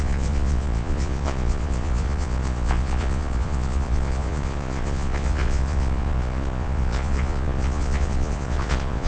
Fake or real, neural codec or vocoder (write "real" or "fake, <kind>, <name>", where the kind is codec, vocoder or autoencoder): fake, vocoder, Vocos